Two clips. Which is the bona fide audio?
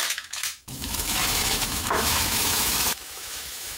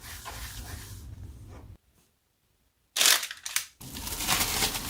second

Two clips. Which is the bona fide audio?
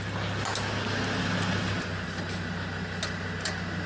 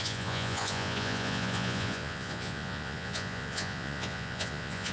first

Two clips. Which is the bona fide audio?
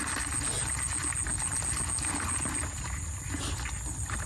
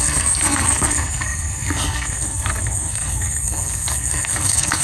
first